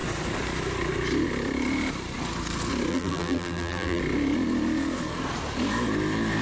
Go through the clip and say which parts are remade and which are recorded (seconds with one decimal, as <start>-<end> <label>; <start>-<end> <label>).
0.0-2.9 recorded; 2.9-4.0 remade; 4.0-6.4 recorded